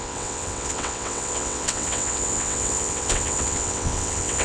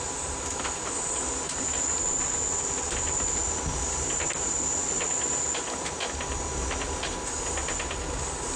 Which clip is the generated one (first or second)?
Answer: first